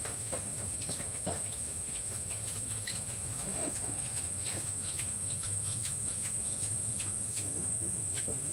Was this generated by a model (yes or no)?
yes